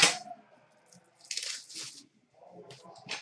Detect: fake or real real